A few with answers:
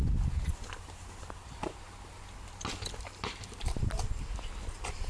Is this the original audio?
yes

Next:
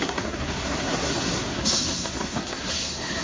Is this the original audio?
no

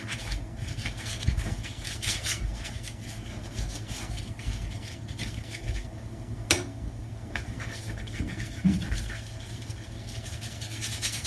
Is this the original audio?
no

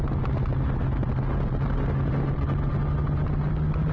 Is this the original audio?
yes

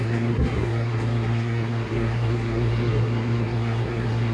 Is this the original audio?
no